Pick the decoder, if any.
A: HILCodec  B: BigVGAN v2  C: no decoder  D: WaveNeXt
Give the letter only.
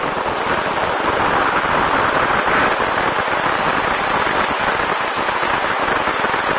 C